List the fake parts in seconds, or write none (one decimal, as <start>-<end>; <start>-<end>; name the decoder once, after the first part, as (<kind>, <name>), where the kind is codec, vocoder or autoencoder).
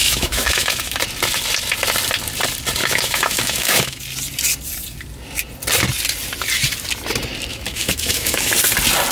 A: 0.0-1.0 (autoencoder, DAC-VAE); 2.8-4.0; 7.5-8.5